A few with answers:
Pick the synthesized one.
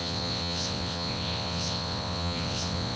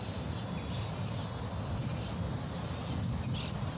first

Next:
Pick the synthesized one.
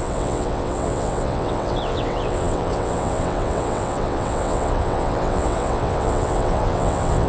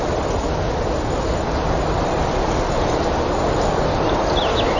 first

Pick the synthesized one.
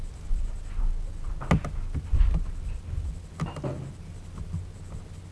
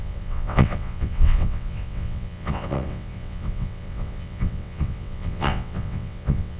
second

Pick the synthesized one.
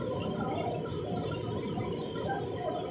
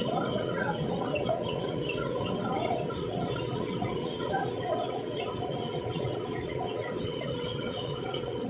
second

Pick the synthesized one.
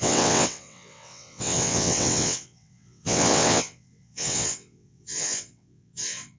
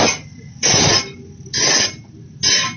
first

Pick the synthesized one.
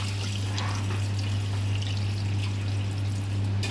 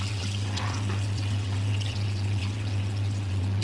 second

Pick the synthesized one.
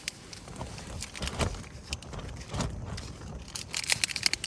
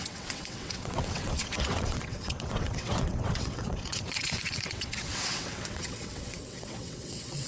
second